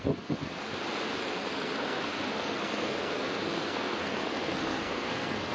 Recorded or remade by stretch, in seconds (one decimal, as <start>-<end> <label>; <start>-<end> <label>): 0.0-0.7 remade; 0.7-1.2 recorded; 1.2-5.5 remade